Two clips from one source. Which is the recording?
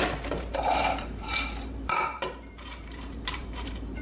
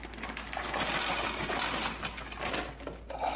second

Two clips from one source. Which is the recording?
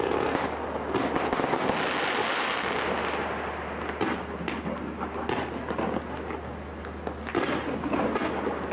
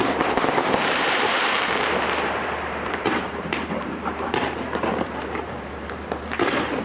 first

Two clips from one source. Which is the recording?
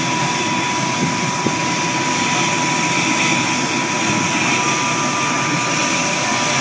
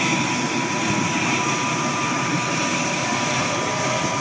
first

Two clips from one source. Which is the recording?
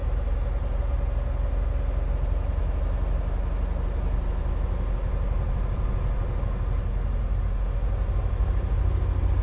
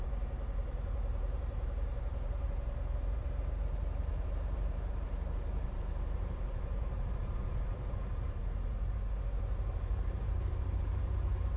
first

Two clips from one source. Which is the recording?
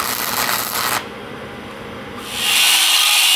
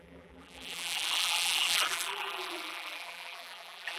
first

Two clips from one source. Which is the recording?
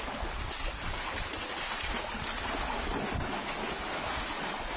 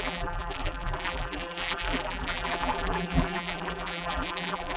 first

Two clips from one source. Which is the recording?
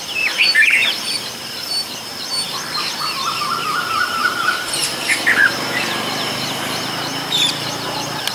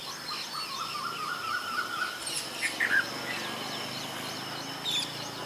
second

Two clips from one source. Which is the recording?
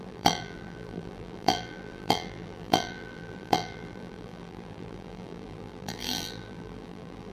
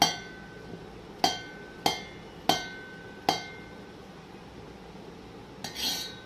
second